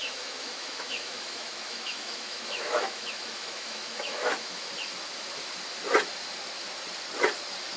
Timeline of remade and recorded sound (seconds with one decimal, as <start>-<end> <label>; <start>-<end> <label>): 0.0-4.7 remade; 4.7-7.8 recorded